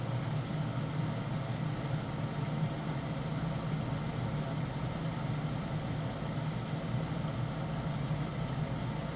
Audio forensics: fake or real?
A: real